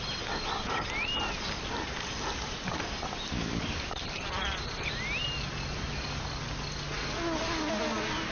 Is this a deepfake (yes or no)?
no